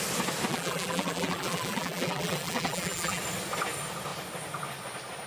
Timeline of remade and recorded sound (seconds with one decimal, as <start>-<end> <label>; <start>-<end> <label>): 0.0-0.5 recorded; 0.5-3.2 remade; 3.2-5.3 recorded